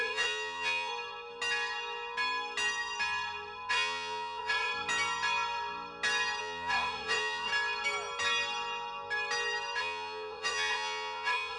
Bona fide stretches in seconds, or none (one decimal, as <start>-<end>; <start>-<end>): 0.9-3.7; 4.7-6.4; 7.5-9.8